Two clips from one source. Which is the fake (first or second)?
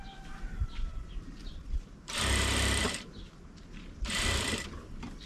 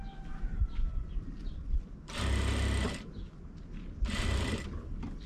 first